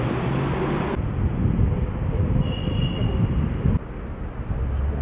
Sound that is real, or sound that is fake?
real